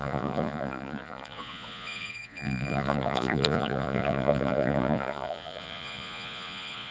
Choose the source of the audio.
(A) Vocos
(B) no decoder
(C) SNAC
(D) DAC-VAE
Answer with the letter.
A